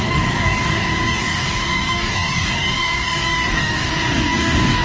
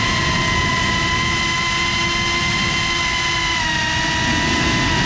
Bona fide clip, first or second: second